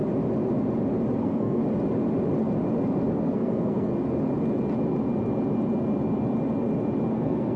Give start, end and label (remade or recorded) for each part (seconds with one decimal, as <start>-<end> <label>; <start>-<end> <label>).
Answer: 0.0-1.2 recorded; 1.2-1.6 remade; 1.6-3.1 recorded; 3.1-3.9 remade; 3.9-7.1 recorded; 7.1-7.6 remade